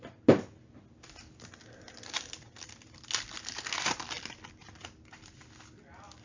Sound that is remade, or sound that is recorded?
recorded